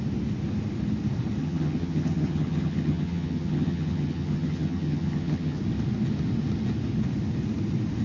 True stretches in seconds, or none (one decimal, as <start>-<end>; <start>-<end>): 0.0-1.4; 5.6-8.0